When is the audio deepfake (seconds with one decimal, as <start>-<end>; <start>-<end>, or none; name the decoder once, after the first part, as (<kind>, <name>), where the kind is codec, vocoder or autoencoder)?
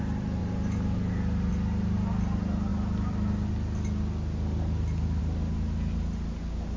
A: none